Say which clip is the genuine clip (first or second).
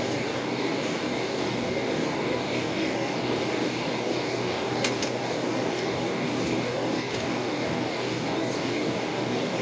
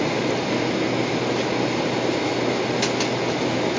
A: second